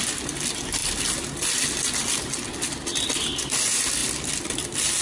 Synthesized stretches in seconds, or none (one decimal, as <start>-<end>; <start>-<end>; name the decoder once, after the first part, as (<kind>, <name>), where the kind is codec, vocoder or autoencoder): none